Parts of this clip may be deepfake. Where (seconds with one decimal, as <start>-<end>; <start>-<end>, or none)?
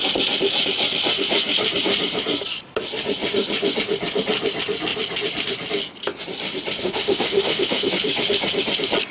6.8-7.9